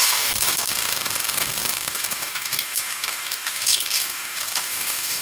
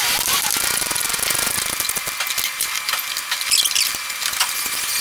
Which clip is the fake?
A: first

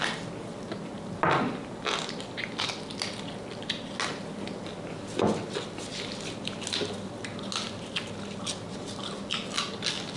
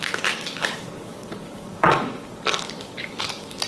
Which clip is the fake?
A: second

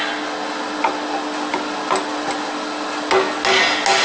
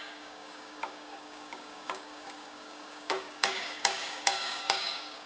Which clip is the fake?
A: second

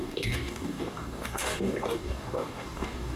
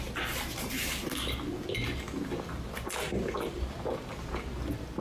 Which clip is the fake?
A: first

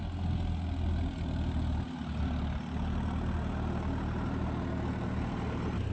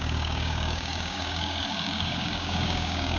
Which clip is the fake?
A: second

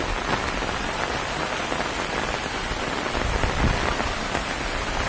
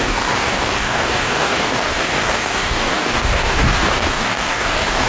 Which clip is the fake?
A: second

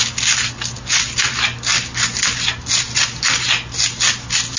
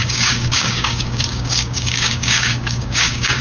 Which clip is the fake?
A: second